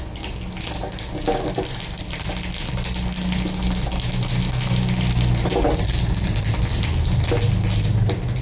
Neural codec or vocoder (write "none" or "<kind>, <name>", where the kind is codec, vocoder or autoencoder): none